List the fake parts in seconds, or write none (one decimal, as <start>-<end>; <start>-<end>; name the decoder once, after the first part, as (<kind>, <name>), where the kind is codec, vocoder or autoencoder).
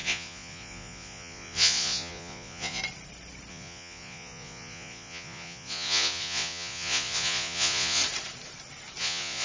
0.0-2.8 (vocoder, Vocos); 3.5-8.0; 9.0-9.4